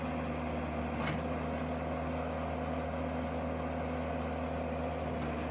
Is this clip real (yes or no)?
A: yes